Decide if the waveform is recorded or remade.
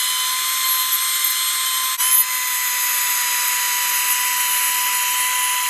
recorded